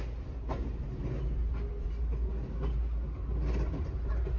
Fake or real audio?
real